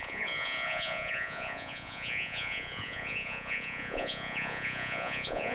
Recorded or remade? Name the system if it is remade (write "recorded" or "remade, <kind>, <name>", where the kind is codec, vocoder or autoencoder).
remade, vocoder, Vocos